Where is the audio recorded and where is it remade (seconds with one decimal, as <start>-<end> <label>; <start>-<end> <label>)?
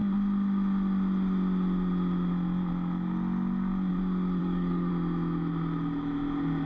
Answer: 0.0-4.4 recorded; 4.4-4.9 remade; 4.9-6.7 recorded